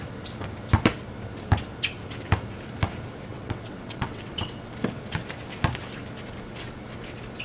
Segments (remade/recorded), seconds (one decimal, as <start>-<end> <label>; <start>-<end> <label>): 0.0-3.3 recorded; 3.3-4.7 remade; 4.7-7.4 recorded